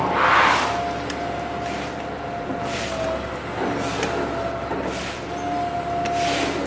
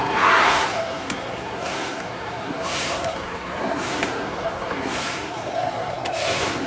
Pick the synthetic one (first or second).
second